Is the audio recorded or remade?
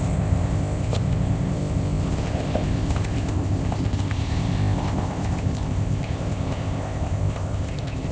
remade